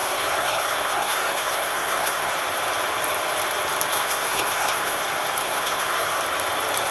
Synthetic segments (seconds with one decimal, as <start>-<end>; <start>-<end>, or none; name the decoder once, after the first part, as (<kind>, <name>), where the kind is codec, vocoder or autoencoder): 0.0-2.3 (codec, SNAC); 3.9-5.0; 5.4-6.2